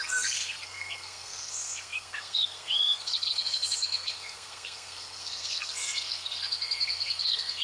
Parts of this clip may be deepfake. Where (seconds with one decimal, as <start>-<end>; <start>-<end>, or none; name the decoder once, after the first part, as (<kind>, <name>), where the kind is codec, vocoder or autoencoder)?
0.0-7.6 (codec, SNAC)